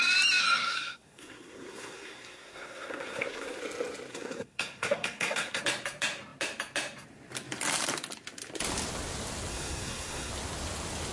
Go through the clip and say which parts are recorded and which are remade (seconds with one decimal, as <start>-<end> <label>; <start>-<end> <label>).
0.0-0.4 recorded; 0.4-3.6 remade; 3.6-4.1 recorded; 4.1-5.6 remade; 5.6-9.5 recorded; 9.5-10.3 remade; 10.3-11.1 recorded